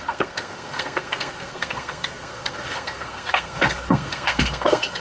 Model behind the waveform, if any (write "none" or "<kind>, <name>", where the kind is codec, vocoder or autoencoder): codec, SNAC